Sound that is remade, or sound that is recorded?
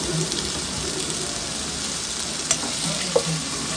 recorded